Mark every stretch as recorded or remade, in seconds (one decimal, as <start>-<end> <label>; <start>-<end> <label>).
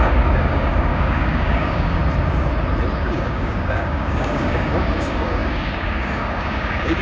0.0-2.0 remade; 2.0-3.0 recorded; 3.0-7.0 remade